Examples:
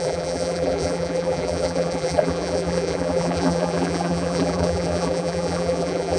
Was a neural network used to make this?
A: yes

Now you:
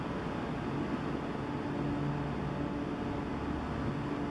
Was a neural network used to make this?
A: no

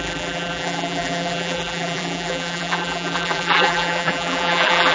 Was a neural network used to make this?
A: yes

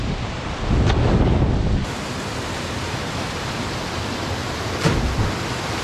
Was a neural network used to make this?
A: no